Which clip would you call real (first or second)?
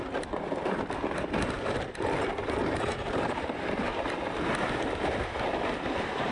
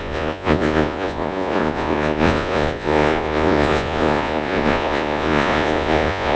first